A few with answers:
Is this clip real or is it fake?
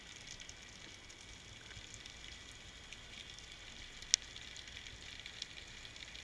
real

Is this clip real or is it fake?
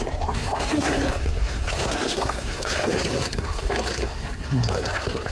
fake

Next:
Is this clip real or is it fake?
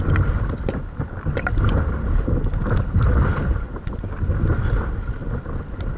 real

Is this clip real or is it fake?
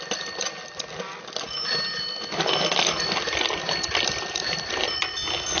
real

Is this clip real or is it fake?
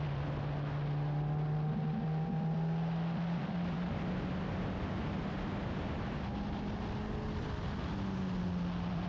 real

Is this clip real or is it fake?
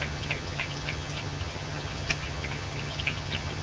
fake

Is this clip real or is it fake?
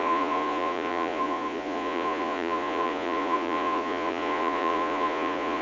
fake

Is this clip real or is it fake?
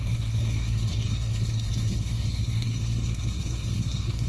fake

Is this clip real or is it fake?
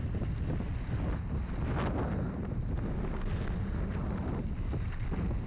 real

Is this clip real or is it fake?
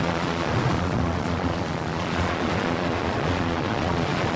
fake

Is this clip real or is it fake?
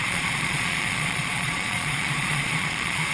fake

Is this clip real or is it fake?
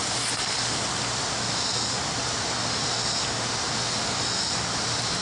real